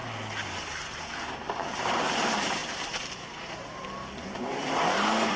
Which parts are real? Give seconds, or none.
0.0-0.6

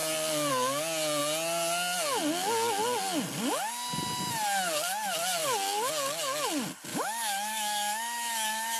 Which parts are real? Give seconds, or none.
0.0-6.9

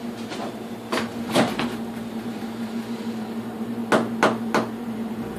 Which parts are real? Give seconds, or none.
3.8-4.8

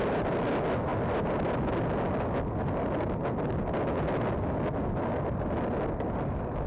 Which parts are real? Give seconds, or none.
0.0-6.7

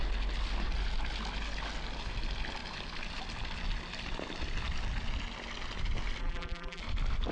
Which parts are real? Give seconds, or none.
0.0-6.2; 6.8-7.3

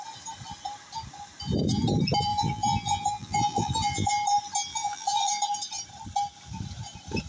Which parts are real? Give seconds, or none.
0.0-2.3; 4.1-4.7; 5.3-7.3